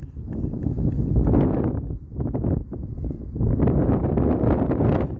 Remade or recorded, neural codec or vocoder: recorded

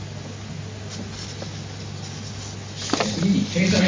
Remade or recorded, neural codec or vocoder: recorded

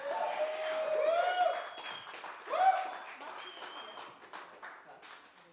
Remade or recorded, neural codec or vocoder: recorded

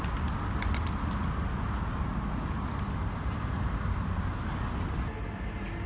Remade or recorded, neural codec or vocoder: recorded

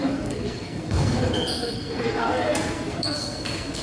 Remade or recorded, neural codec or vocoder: remade, codec, SNAC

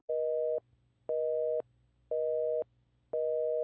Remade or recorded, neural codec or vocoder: recorded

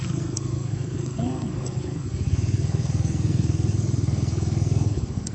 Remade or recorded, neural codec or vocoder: remade, codec, SNAC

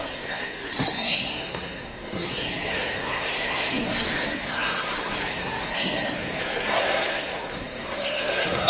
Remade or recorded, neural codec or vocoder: remade, codec, SNAC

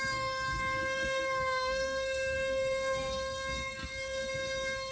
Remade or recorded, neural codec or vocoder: remade, codec, SNAC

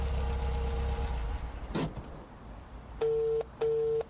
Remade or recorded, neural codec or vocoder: recorded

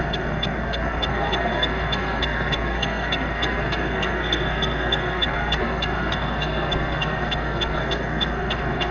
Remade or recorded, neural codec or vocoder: remade, codec, SNAC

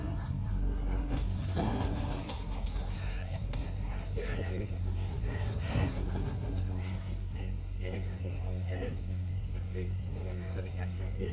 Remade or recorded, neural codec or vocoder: remade, codec, SNAC